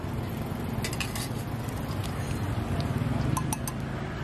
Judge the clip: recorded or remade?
recorded